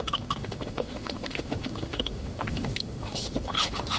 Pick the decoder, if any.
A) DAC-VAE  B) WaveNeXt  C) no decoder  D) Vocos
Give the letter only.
A